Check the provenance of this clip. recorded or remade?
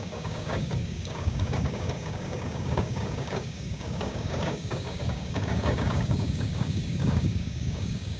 remade